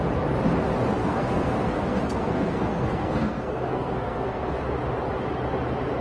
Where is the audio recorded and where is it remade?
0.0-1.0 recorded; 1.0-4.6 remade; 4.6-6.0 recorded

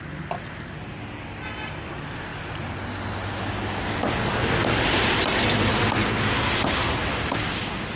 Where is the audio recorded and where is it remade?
0.0-8.0 recorded

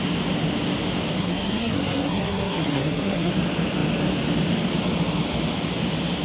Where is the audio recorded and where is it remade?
0.0-1.2 recorded; 1.2-3.3 remade; 3.3-6.2 recorded

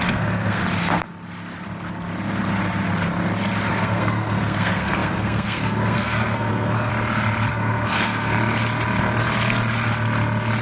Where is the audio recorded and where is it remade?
0.0-0.6 remade; 0.6-3.7 recorded; 3.7-6.9 remade; 6.9-7.5 recorded; 7.5-8.3 remade; 8.3-10.6 recorded